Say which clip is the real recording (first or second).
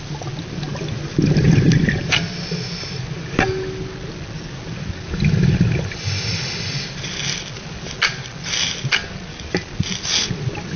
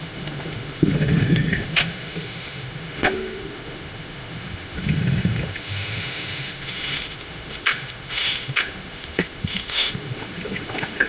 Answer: first